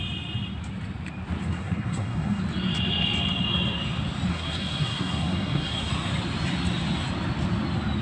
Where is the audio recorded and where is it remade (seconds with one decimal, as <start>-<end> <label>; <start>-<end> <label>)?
0.0-1.4 recorded; 1.4-2.4 remade; 2.4-4.3 recorded; 4.3-5.9 remade; 5.9-8.0 recorded